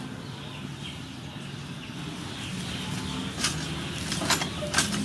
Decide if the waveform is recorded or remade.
recorded